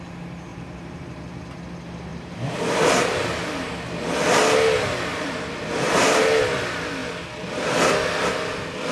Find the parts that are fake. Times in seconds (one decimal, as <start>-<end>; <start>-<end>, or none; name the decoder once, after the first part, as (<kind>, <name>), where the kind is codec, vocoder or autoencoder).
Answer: 0.5-1.0 (vocoder, BigVGAN v2); 2.1-3.7; 5.1-6.4